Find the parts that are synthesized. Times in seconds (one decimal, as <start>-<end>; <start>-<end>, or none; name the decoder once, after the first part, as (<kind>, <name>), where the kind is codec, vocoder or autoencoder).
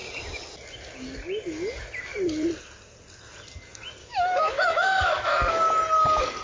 4.0-5.4 (autoencoder, DAC-VAE)